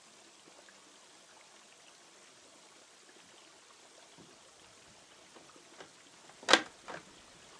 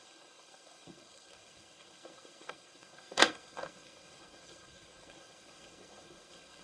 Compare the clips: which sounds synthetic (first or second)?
second